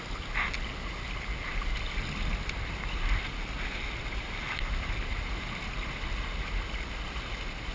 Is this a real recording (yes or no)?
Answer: yes